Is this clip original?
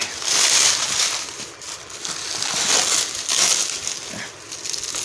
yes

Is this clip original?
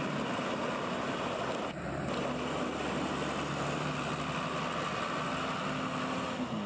yes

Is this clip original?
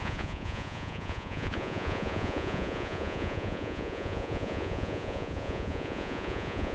no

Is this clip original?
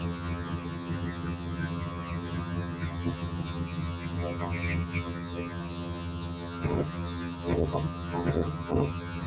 no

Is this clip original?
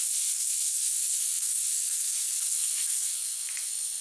no